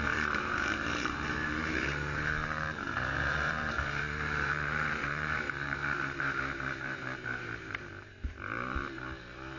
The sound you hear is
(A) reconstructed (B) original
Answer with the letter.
A